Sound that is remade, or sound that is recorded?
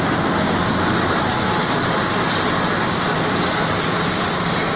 recorded